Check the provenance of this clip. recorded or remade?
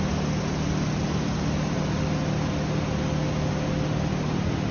recorded